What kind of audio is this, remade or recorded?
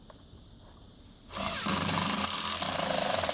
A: recorded